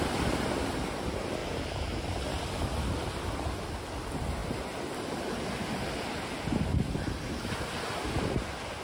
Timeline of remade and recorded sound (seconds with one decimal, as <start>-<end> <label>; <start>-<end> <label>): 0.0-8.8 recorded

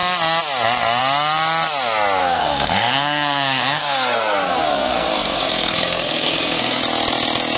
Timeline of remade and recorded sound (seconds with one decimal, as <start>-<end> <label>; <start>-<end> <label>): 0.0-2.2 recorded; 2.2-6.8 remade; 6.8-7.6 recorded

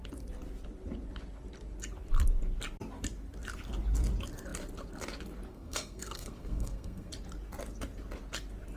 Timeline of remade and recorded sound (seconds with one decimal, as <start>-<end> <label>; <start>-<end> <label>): 0.0-5.5 recorded; 5.5-7.1 remade; 7.1-8.8 recorded